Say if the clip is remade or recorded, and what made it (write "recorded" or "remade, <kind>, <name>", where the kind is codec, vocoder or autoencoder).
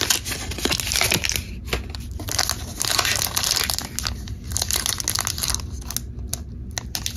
recorded